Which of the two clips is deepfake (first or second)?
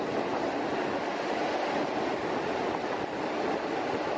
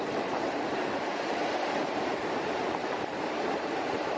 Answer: second